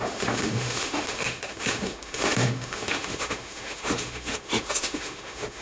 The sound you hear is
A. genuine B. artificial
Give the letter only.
B